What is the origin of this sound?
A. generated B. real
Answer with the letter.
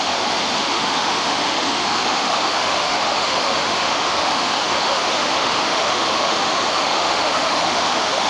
A